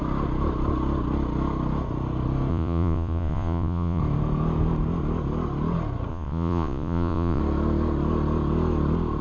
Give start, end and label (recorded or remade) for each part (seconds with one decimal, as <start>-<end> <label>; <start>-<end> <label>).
0.0-2.5 recorded; 2.5-4.0 remade; 4.0-6.1 recorded; 6.1-7.4 remade; 7.4-9.2 recorded